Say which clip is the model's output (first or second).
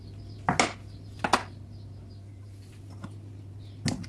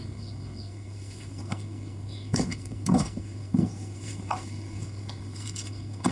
second